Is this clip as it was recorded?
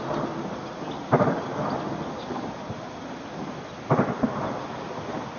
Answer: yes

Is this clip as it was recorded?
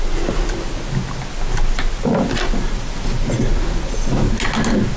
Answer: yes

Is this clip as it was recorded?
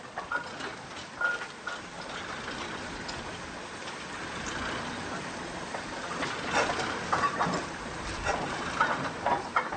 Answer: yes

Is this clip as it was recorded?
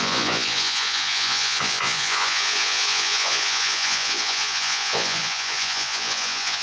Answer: no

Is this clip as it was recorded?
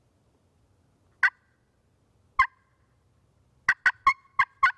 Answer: yes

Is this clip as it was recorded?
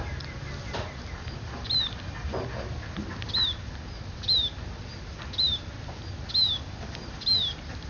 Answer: yes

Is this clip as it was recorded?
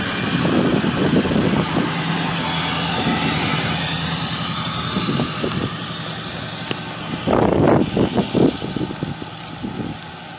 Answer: yes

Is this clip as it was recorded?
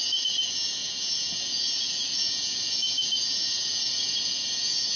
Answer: no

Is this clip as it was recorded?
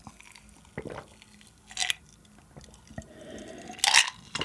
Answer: yes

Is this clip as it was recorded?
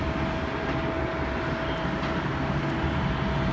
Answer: yes